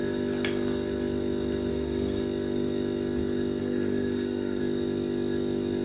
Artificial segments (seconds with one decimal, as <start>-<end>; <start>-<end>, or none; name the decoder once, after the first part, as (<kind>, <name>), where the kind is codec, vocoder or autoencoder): 1.7-2.2 (codec, SNAC); 3.6-4.6